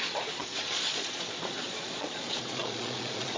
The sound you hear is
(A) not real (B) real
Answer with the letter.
A